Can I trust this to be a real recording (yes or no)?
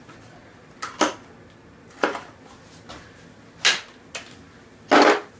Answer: yes